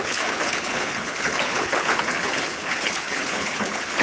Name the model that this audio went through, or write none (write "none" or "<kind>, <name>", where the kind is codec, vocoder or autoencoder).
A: codec, HILCodec